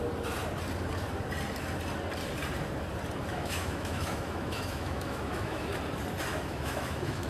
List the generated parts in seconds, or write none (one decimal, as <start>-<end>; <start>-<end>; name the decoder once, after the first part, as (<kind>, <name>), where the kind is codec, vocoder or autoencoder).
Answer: 3.3-5.8 (autoencoder, DAC-VAE); 6.3-7.3